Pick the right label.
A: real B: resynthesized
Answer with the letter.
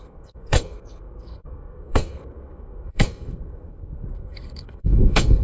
B